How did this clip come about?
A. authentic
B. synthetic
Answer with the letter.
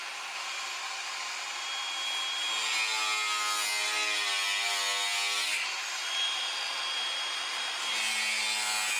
A